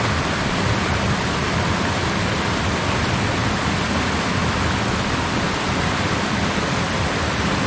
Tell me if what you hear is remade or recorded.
recorded